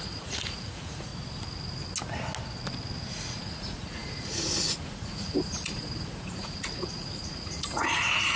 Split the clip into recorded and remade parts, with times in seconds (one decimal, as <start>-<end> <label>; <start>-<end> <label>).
0.0-1.1 remade; 1.1-3.1 recorded; 3.1-8.4 remade